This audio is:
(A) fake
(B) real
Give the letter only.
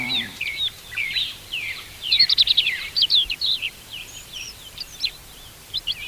A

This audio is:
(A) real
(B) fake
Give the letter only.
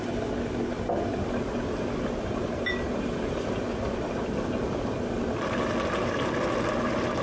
A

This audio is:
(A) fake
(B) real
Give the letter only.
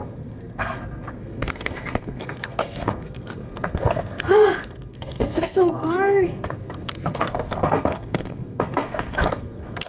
A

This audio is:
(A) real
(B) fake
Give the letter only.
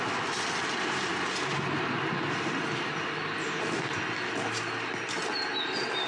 A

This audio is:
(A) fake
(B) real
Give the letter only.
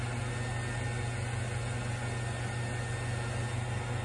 B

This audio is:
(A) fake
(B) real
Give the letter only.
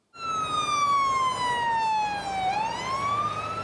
B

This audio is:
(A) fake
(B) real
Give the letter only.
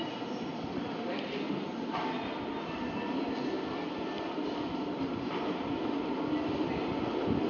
B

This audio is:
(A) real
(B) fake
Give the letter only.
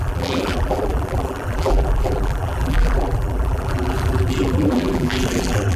B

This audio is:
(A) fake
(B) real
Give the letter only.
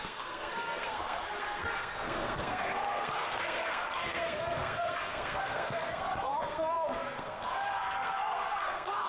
A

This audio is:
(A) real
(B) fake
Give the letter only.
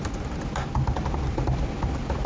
A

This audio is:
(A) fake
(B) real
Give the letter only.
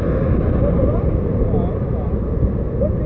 B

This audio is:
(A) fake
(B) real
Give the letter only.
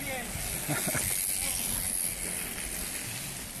B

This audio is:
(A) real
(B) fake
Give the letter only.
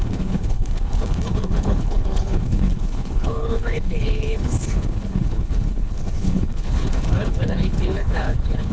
B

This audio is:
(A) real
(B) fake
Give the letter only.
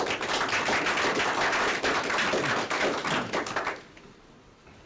A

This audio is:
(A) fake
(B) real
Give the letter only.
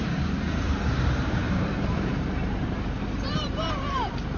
A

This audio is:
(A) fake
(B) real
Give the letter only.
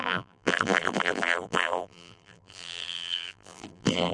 A